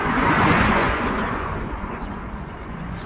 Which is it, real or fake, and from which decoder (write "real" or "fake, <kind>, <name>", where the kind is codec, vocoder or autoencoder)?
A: fake, vocoder, Vocos